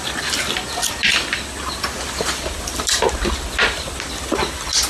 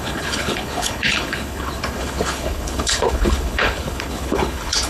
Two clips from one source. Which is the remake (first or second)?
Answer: second